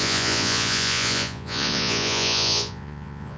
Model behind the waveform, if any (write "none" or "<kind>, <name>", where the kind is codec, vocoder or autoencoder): vocoder, Vocos